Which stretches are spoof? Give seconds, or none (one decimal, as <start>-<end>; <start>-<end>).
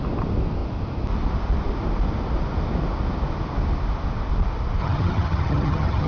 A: 4.8-6.1